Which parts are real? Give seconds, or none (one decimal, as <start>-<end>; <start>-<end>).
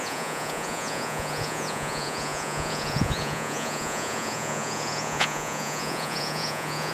none